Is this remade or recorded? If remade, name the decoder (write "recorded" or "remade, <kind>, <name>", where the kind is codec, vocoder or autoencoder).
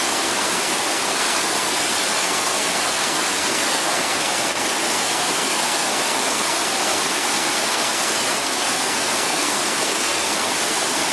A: remade, codec, SNAC